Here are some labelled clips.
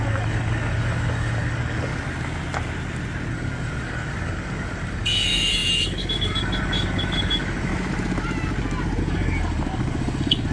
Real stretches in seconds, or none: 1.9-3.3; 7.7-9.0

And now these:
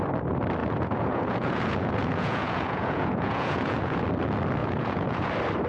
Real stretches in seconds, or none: 0.0-0.6; 4.0-4.6; 5.3-5.7

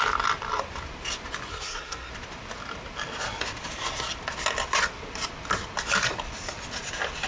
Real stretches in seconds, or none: 0.0-1.5; 2.1-7.3

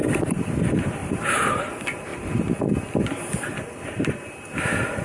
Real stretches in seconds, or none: 0.0-1.0; 1.6-5.0

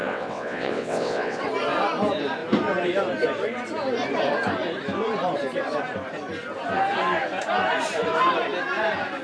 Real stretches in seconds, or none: 1.4-9.2

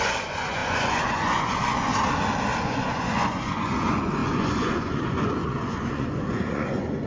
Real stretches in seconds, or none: 1.9-2.6

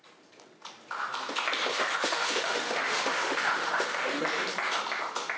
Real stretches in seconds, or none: 0.0-1.7; 4.2-5.4